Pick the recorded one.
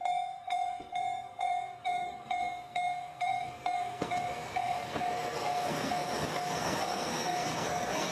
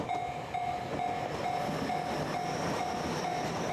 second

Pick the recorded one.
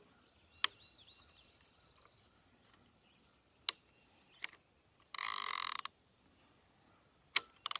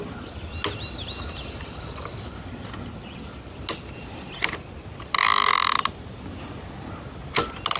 second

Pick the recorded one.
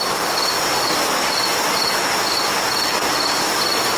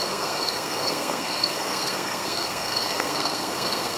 first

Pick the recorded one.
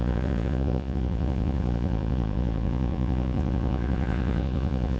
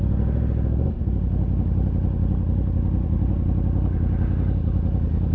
second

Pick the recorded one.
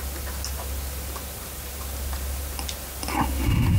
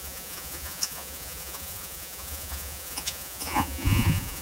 first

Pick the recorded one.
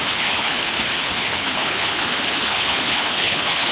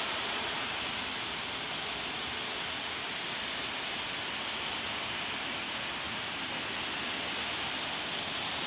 second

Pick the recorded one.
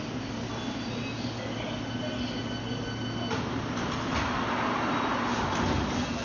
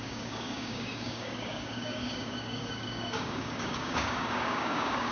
first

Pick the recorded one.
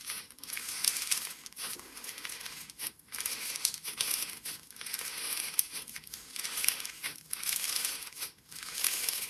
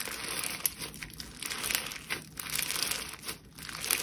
second